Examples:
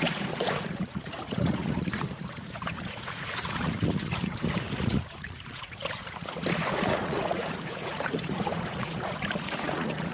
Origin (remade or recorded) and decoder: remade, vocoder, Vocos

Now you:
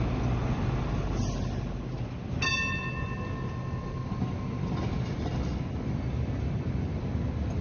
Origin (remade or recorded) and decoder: recorded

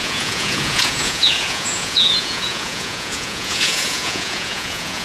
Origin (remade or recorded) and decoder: remade, vocoder, Vocos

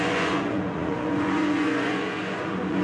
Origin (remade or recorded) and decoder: remade, vocoder, Vocos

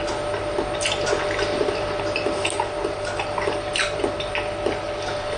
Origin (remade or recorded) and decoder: recorded